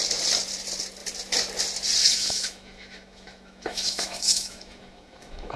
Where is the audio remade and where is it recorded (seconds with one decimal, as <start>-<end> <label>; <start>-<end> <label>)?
0.0-2.0 recorded; 2.0-5.6 remade